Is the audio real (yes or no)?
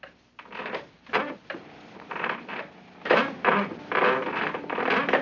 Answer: no